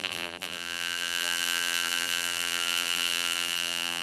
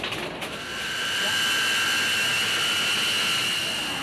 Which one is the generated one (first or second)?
first